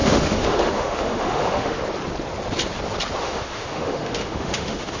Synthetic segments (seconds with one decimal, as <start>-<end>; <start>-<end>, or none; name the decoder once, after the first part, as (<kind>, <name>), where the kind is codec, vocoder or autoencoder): 0.0-1.8 (autoencoder, DAC-VAE); 3.2-5.0